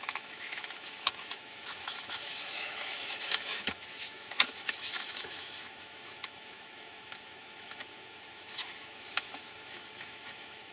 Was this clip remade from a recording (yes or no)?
yes